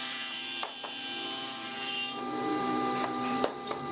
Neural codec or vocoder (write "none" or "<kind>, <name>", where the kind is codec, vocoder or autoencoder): vocoder, BigVGAN v2